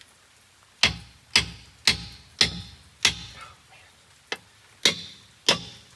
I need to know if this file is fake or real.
real